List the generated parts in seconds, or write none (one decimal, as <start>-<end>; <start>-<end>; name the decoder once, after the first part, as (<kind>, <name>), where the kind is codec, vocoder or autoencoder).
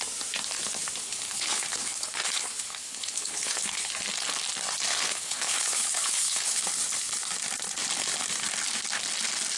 1.0-3.9 (codec, HILCodec); 4.9-6.6